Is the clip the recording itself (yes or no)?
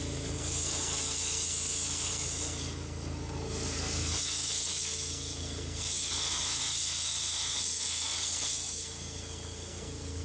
no